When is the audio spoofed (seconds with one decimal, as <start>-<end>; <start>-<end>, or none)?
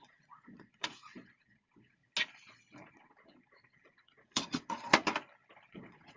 0.0-2.0; 2.9-5.0; 5.7-6.2